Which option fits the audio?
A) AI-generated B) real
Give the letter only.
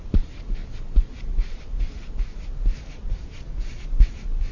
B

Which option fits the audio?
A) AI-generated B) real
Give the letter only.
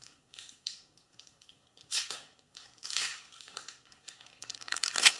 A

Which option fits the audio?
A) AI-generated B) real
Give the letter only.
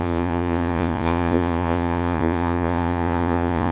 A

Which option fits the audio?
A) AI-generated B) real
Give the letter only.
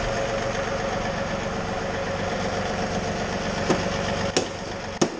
B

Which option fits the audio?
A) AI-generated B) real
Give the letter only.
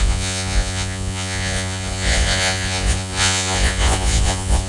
A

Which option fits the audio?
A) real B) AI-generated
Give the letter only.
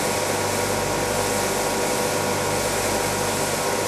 A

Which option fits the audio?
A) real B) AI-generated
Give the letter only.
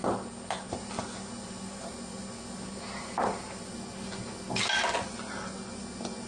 A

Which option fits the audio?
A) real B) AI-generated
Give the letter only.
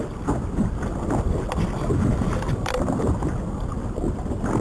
A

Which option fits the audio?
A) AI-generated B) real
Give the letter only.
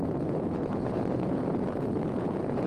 A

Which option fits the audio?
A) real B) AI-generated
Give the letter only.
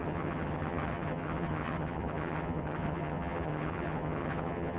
B